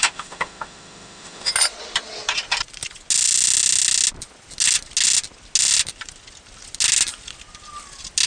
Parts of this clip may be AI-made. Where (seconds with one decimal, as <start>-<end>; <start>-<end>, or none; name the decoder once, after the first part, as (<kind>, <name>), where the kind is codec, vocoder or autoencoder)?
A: 0.0-1.5 (autoencoder, DAC-VAE)